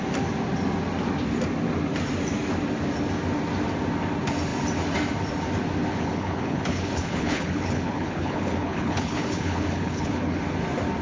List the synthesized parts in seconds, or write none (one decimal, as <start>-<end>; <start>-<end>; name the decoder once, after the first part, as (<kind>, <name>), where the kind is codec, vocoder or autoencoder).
5.9-10.4 (codec, HILCodec)